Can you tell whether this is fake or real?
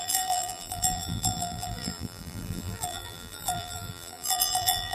fake